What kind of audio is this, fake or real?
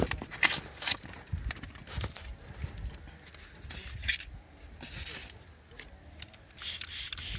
real